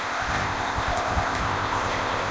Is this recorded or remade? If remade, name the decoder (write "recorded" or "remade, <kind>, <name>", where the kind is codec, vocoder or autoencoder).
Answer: remade, codec, ZipCodec